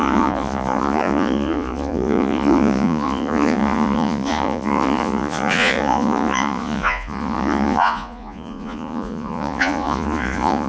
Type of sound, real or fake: fake